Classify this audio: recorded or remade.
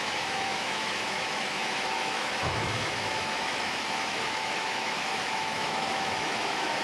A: remade